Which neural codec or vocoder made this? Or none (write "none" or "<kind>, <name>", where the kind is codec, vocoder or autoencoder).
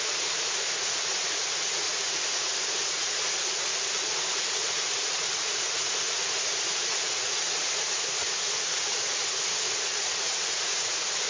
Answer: vocoder, Vocos